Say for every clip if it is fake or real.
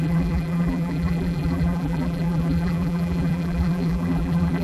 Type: fake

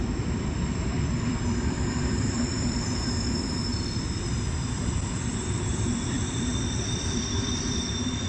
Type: fake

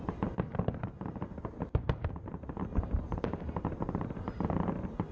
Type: fake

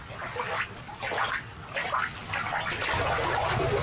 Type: real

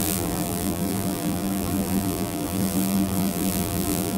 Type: fake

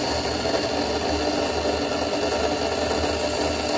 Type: real